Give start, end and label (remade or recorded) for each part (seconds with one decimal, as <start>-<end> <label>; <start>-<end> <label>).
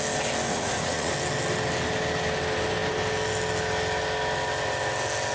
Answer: 0.0-0.5 recorded; 0.5-1.1 remade; 1.1-5.3 recorded